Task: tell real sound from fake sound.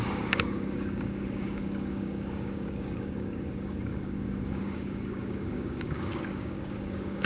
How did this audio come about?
fake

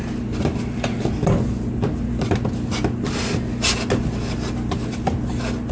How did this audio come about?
real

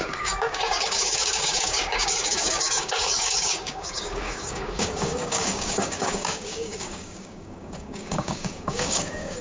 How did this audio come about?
fake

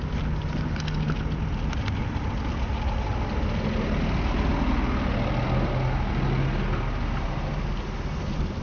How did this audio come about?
real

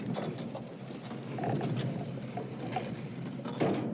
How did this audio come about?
real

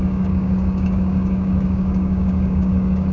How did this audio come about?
fake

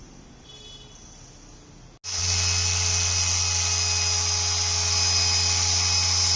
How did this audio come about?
real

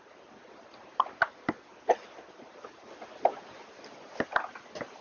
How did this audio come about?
real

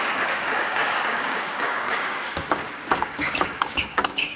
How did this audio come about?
fake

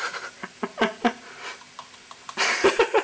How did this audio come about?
real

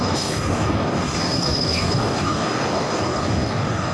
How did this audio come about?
fake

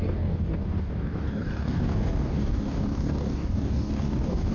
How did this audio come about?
fake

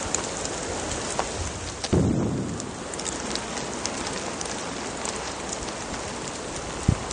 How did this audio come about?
real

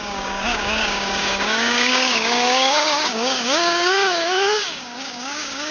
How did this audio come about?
fake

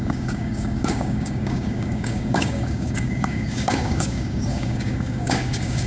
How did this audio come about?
fake